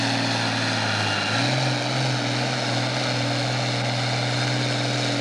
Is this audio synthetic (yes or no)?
no